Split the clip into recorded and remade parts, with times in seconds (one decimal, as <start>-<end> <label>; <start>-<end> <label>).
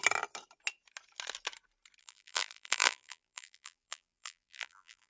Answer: 0.0-2.0 recorded; 2.0-5.1 remade